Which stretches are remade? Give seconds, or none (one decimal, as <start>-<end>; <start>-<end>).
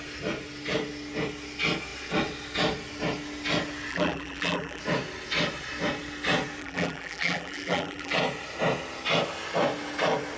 3.9-4.8; 6.6-8.1